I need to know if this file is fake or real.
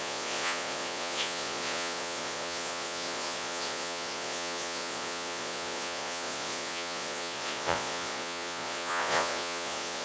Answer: fake